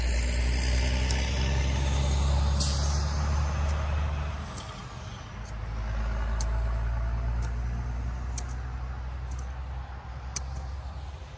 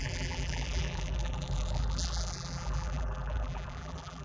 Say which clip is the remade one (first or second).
second